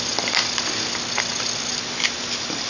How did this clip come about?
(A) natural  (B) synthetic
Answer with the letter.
A